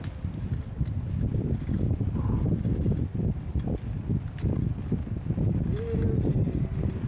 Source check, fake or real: real